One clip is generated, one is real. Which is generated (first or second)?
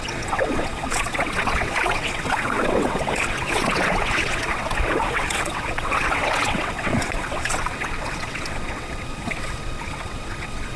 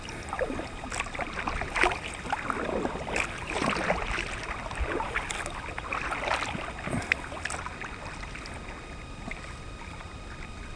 first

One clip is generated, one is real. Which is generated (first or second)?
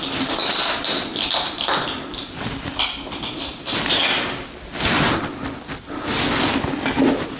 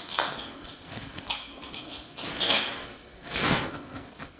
second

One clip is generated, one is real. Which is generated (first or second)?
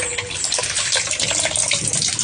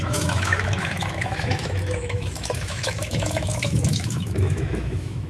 second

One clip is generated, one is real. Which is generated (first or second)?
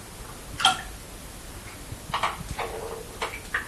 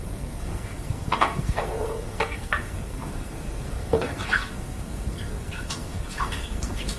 second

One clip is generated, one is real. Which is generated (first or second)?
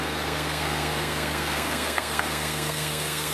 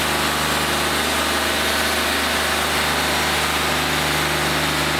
first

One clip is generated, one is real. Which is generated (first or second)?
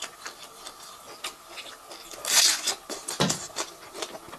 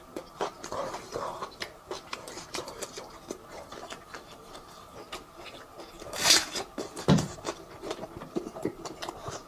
second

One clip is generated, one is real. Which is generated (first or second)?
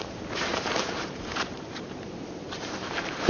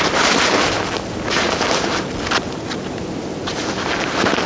first